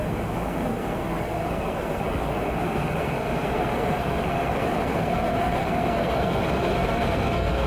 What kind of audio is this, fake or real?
fake